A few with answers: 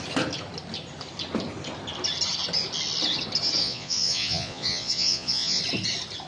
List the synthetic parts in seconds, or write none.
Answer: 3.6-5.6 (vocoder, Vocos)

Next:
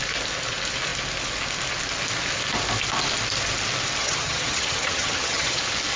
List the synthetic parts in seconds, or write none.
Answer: 4.0-5.6 (vocoder, HiFi-GAN)

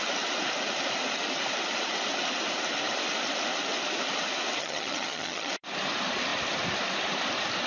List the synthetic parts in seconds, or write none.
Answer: 4.6-5.5 (vocoder, HiFi-GAN)

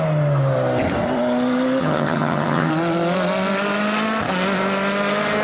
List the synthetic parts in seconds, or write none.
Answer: 1.8-2.7 (vocoder, HiFi-GAN)

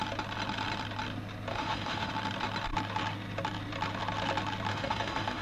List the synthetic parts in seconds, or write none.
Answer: 1.5-2.1 (autoencoder, DAC-VAE); 4.7-5.4

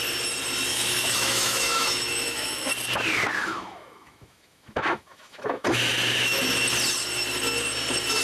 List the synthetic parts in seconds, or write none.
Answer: 0.7-2.7 (autoencoder, DAC-VAE); 3.4-6.4

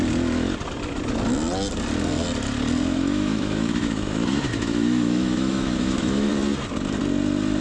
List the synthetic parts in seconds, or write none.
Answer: 2.9-6.3 (autoencoder, DAC-VAE)

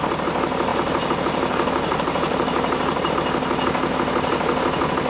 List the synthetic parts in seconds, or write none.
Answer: 0.7-3.1 (vocoder, BigVGAN v2)